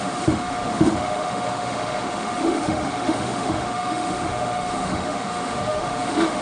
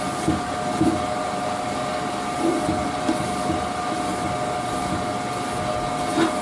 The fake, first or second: first